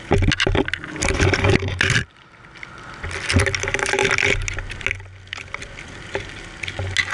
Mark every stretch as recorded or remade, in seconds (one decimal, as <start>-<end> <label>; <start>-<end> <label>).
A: 0.0-7.1 recorded